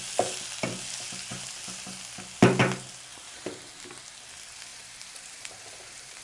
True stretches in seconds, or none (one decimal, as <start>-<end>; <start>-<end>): 0.0-3.1; 3.7-4.7